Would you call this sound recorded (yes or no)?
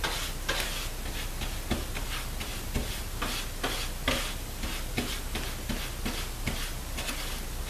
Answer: yes